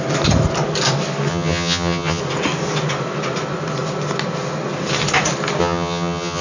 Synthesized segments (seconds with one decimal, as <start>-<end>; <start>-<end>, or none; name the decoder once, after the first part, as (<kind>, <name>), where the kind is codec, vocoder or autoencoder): 1.3-2.2 (vocoder, HiFi-GAN); 5.6-6.4